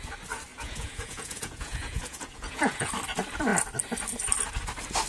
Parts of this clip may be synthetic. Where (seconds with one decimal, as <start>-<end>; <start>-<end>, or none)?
0.5-2.9